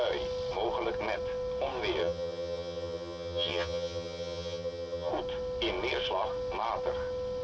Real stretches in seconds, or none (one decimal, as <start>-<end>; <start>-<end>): 0.0-2.0; 5.1-7.4